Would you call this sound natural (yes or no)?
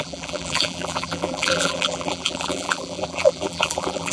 no